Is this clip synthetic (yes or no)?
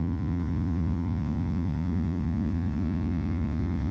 yes